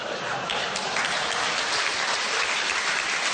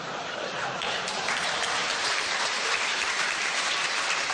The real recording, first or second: first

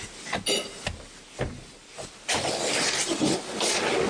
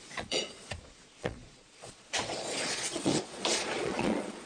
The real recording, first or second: first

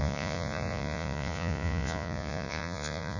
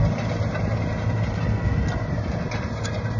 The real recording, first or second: second